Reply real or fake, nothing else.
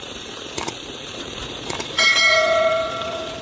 fake